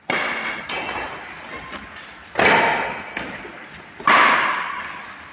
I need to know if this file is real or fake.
real